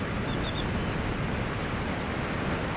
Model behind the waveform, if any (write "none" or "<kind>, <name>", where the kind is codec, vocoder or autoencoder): none